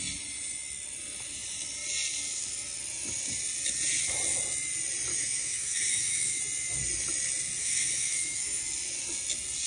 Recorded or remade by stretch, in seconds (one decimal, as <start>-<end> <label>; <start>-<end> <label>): 0.0-5.1 recorded; 5.1-6.4 remade; 6.4-7.6 recorded; 7.6-8.6 remade; 8.6-9.7 recorded